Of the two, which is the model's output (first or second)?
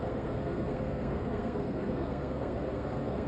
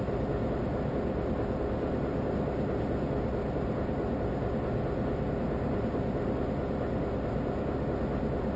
first